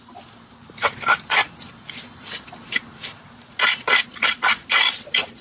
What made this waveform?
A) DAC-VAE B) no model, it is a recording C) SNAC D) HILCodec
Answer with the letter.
B